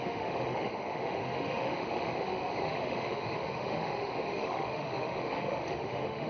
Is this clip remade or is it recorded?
remade